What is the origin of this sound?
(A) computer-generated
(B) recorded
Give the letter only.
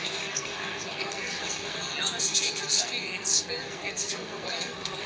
A